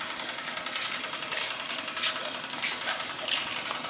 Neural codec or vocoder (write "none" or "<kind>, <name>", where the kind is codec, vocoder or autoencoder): none